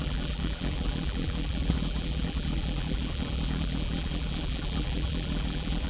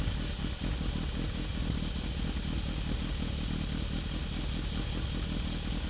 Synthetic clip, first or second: first